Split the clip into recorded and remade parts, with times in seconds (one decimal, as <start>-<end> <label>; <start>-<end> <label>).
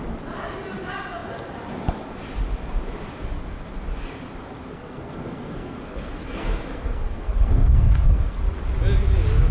0.0-4.7 recorded; 4.7-8.4 remade; 8.4-9.5 recorded